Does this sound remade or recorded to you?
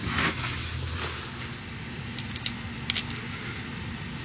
recorded